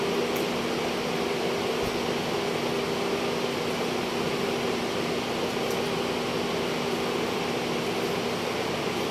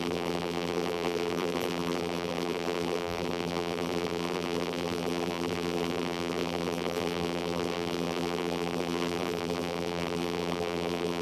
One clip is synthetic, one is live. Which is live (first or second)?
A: first